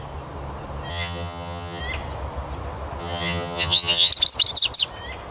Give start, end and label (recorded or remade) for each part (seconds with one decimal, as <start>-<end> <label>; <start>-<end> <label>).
0.0-0.9 recorded; 0.9-1.8 remade; 1.8-3.0 recorded; 3.0-4.1 remade; 4.1-5.3 recorded